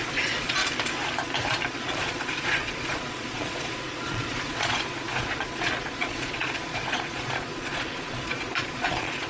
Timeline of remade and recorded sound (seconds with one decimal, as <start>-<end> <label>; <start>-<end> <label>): 0.0-0.6 remade; 0.6-1.8 recorded; 1.8-9.3 remade